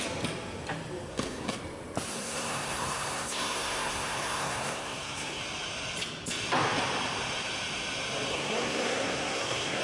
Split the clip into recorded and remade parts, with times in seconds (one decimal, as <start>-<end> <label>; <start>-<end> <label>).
0.0-1.1 recorded; 1.1-1.6 remade; 1.6-2.1 recorded; 2.1-5.4 remade; 5.4-8.3 recorded; 8.3-9.8 remade